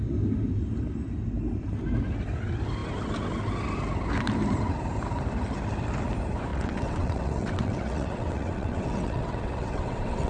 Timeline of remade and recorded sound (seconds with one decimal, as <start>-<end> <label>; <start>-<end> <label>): 0.0-6.5 recorded; 6.5-10.3 remade